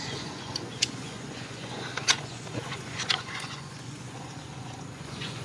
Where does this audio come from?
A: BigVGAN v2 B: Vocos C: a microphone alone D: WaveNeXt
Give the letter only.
B